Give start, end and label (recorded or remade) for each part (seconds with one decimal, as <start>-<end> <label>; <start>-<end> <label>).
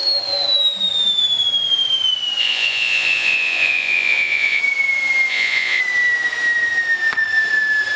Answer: 0.0-2.4 recorded; 2.4-4.6 remade; 4.6-5.3 recorded; 5.3-5.8 remade; 5.8-8.0 recorded